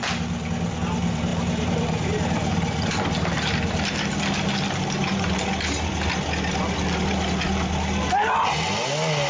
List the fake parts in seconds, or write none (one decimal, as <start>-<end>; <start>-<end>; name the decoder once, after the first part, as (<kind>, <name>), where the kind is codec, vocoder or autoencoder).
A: 1.3-2.9 (vocoder, BigVGAN v2); 5.0-5.5